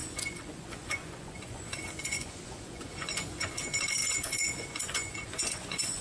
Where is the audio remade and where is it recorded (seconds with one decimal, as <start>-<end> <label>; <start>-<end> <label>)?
0.0-6.0 remade